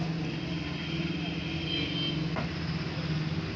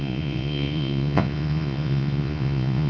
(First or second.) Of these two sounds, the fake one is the second